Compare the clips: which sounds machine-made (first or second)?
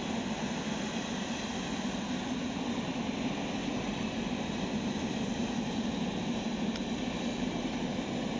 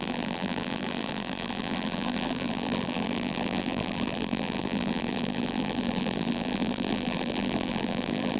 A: second